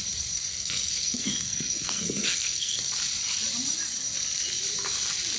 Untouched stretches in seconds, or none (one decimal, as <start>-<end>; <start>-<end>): 0.0-0.5; 2.8-5.4